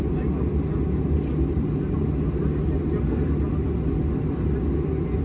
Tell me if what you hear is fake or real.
real